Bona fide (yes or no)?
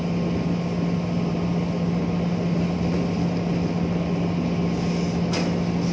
yes